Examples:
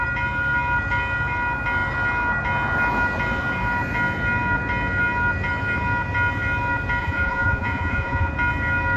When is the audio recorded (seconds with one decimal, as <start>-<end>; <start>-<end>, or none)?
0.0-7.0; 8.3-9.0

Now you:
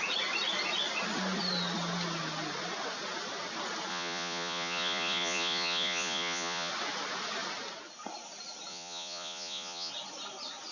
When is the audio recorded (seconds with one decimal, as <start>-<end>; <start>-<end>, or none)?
0.0-3.9; 6.7-8.7; 9.9-10.7

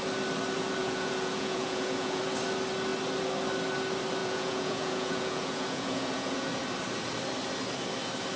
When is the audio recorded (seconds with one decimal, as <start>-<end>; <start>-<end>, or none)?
0.0-0.8; 2.2-4.2; 6.5-8.4

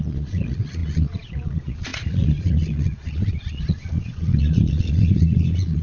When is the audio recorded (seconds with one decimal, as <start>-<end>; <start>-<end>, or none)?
none

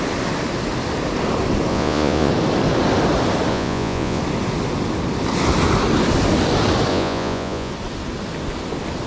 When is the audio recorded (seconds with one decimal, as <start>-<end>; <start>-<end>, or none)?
0.0-1.7; 2.3-3.5; 4.2-6.9; 7.7-9.1

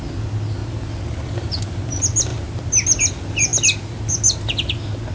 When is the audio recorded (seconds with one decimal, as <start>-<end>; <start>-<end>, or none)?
0.0-5.1

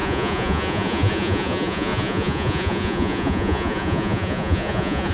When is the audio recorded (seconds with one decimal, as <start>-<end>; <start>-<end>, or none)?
none

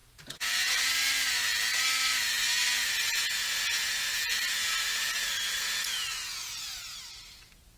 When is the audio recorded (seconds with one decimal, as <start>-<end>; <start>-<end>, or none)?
0.9-3.2; 7.0-7.8